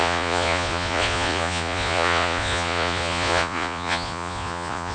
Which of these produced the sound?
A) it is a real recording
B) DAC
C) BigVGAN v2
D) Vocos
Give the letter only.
D